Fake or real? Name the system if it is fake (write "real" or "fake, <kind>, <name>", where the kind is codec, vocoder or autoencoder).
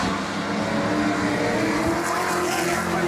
real